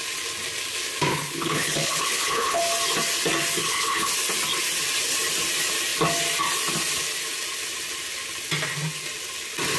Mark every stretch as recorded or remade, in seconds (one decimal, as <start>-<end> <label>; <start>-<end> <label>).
0.0-1.1 recorded; 1.1-2.6 remade; 2.6-3.6 recorded; 3.6-4.1 remade; 4.1-9.8 recorded